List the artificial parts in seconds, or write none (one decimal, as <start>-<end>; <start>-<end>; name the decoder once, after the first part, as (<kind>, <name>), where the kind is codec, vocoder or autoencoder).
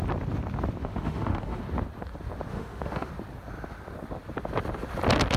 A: 0.8-1.6 (autoencoder, DAC-VAE); 2.5-3.1